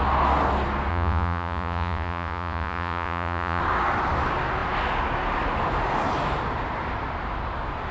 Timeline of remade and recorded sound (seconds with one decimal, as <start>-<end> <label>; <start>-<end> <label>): 0.0-0.9 recorded; 0.9-3.6 remade; 3.6-7.9 recorded